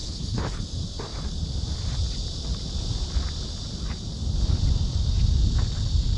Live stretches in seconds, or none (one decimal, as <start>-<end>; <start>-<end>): 0.6-6.2